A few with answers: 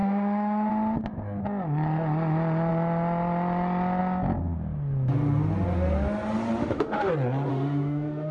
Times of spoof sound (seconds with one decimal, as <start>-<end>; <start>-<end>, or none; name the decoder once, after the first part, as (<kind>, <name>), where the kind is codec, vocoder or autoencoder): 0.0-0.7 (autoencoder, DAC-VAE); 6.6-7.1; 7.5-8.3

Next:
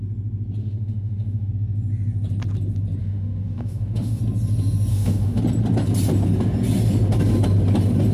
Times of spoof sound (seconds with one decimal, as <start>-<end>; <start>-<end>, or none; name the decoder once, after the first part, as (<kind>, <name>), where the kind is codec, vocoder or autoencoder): 0.6-1.5 (autoencoder, DAC-VAE); 3.0-4.2; 4.9-5.4

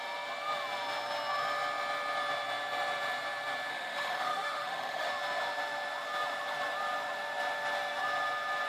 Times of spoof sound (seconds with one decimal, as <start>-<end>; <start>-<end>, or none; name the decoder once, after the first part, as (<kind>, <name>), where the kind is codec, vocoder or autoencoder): 3.7-5.1 (autoencoder, DAC-VAE)